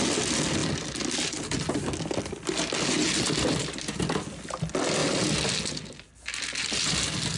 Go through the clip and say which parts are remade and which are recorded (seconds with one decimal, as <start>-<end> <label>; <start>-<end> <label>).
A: 0.0-7.4 recorded